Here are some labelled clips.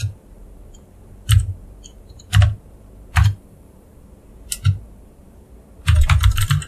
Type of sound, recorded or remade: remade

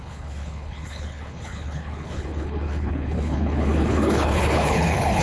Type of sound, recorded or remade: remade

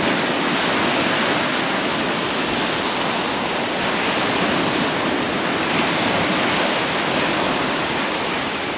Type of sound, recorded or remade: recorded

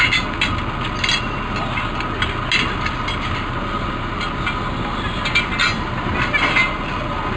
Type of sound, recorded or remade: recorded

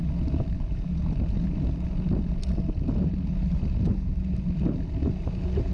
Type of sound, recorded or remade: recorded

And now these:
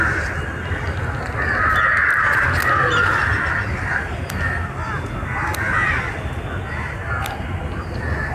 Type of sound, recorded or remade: recorded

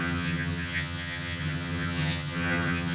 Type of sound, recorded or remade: remade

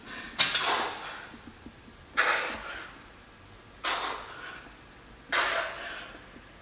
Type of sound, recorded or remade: recorded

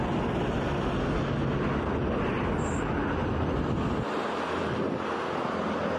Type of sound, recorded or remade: recorded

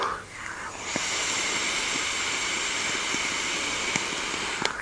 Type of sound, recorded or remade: recorded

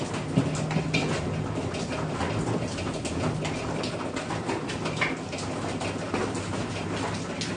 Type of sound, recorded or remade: recorded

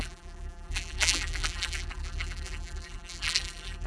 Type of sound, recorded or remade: remade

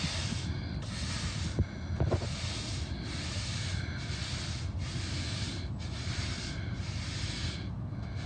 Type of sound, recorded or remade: recorded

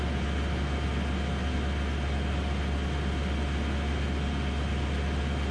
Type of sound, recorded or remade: recorded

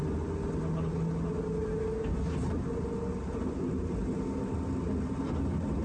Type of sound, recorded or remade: recorded